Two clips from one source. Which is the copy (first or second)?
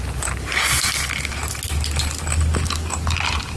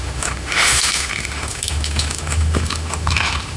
second